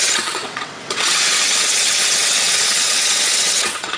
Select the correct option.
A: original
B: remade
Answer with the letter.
B